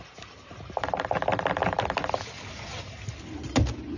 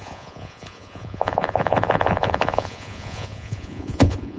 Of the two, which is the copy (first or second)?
second